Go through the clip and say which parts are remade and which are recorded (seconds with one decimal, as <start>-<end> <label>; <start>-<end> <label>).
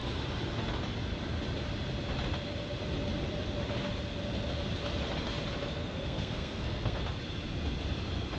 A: 0.0-5.8 recorded; 5.8-7.0 remade; 7.0-8.4 recorded